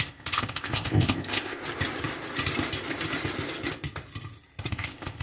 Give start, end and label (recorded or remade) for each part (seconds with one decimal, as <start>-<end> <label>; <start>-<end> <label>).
0.0-1.6 remade; 1.6-4.7 recorded; 4.7-5.2 remade